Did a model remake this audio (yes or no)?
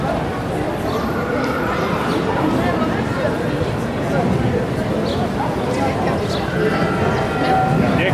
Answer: yes